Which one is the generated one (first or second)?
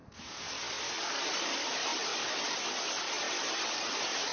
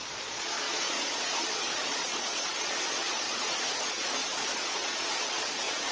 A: second